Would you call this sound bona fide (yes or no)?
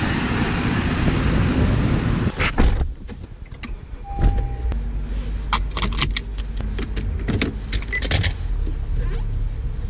yes